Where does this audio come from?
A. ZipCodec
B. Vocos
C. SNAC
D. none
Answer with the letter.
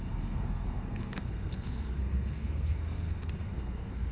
C